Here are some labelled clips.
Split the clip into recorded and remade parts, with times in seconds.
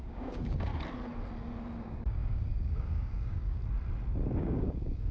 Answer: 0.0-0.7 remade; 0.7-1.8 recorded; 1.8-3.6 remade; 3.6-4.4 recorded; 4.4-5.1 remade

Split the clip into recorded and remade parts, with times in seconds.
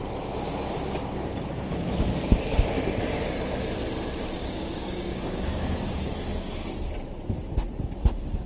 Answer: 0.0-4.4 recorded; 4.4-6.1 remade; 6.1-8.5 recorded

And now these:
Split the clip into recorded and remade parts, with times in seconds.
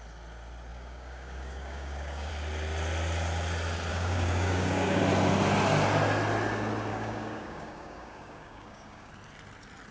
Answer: 0.0-0.7 recorded; 0.7-2.3 remade; 2.3-3.9 recorded; 3.9-5.0 remade; 5.0-6.9 recorded; 6.9-9.1 remade; 9.1-9.9 recorded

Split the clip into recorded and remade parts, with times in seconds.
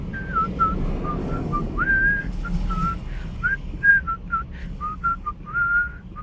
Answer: 0.0-1.2 recorded; 1.2-1.8 remade; 1.8-2.2 recorded; 2.2-3.9 remade; 3.9-4.6 recorded; 4.6-5.3 remade; 5.3-6.2 recorded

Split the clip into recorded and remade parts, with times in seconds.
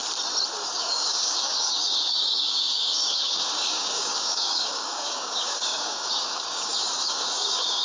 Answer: 0.0-0.7 recorded; 0.7-7.8 remade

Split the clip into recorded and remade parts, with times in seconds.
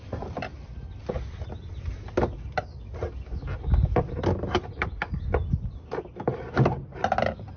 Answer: 0.0-7.6 recorded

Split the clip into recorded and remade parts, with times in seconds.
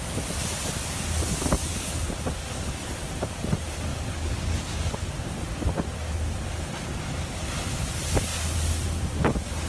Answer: 0.0-1.7 recorded; 1.7-2.9 remade; 2.9-3.9 recorded; 3.9-5.1 remade; 5.1-9.7 recorded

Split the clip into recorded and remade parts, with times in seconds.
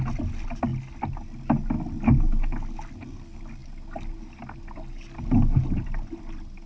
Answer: 0.0-6.7 recorded